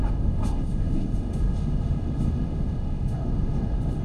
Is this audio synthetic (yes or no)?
yes